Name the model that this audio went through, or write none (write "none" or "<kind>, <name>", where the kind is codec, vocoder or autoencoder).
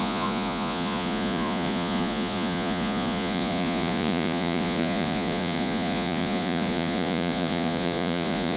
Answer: vocoder, Vocos